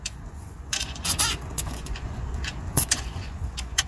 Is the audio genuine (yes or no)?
no